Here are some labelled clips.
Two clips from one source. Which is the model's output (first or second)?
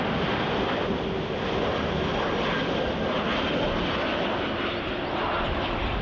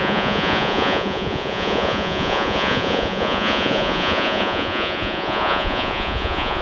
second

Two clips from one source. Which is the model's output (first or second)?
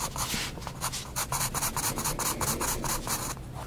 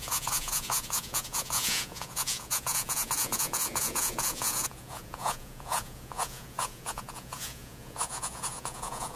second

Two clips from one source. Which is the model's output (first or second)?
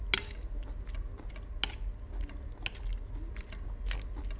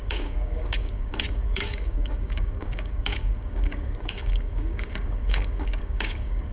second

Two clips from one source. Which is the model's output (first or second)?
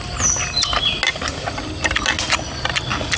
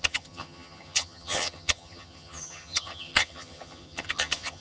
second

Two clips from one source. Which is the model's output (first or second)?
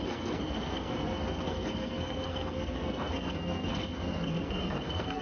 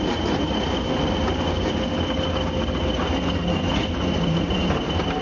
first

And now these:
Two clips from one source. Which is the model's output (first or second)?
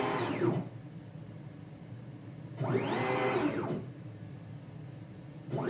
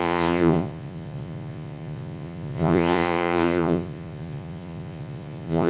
second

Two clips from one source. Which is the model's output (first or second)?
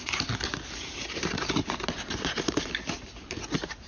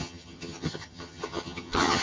second